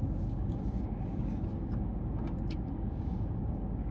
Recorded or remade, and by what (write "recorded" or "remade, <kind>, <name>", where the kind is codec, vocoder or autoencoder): remade, codec, DAC